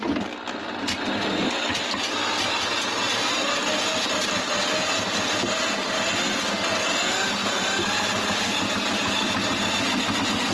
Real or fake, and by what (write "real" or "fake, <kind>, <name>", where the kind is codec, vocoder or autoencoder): real